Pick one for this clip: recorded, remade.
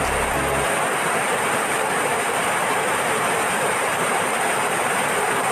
recorded